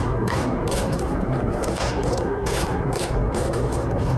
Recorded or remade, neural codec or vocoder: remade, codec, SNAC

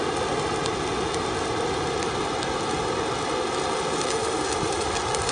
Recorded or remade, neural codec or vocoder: recorded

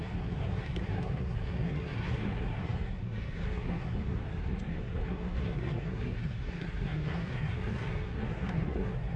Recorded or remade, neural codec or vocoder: remade, codec, SNAC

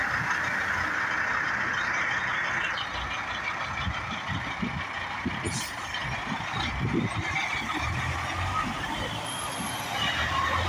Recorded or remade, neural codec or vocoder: recorded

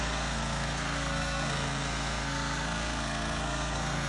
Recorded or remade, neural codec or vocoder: remade, codec, SNAC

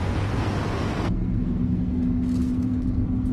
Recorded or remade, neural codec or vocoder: remade, codec, SNAC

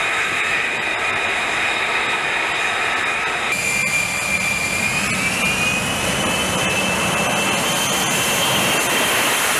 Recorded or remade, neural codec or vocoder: recorded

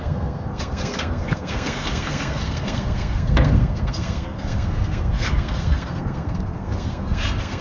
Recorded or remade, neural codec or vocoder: remade, codec, SNAC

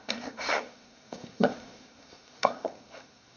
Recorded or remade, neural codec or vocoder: remade, codec, SNAC